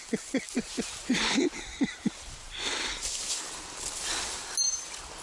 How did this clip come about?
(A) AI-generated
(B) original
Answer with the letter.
B